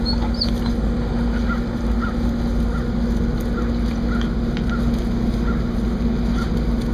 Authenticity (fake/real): real